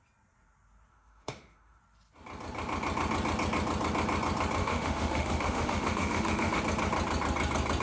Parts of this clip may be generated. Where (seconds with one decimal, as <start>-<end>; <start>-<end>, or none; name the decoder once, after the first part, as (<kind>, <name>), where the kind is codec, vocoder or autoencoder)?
0.9-1.8 (autoencoder, DAC-VAE); 4.6-6.6